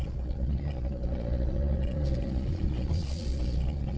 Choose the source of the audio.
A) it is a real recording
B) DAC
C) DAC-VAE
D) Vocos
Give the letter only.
D